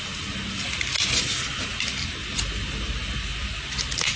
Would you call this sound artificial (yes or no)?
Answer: no